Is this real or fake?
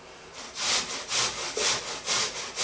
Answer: real